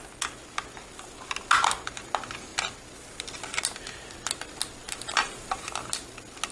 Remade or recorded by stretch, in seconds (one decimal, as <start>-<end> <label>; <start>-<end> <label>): 0.0-6.5 recorded